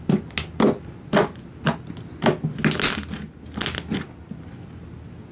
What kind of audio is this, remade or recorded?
recorded